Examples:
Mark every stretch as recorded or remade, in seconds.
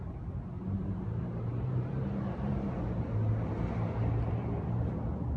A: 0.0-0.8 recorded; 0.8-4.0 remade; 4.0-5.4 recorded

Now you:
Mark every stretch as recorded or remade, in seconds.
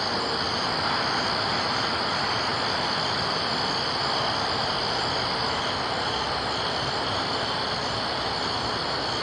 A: 0.0-9.2 recorded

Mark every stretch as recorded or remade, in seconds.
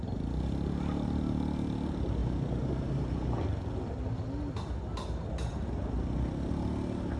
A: 0.0-2.2 recorded; 2.2-2.7 remade; 2.7-7.2 recorded